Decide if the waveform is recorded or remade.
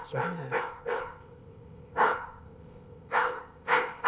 remade